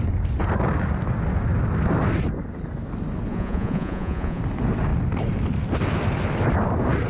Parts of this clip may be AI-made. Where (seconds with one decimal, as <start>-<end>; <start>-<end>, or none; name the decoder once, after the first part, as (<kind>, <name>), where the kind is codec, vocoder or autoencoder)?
3.3-4.4 (vocoder, Vocos)